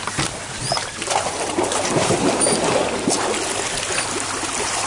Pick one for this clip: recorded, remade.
remade